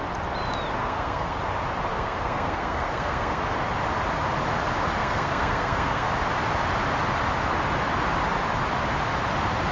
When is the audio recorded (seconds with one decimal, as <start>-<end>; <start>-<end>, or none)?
0.0-0.8; 1.4-1.9; 3.4-5.0; 6.1-9.7